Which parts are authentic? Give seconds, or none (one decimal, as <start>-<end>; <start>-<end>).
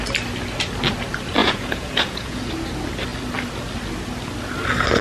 0.0-1.4; 2.5-5.0